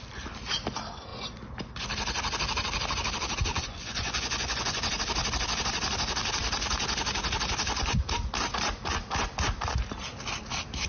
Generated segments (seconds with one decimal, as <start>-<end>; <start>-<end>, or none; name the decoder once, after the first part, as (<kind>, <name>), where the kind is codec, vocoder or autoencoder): 3.5-4.9 (vocoder, Vocos)